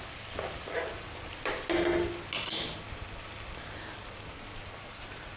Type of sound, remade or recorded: recorded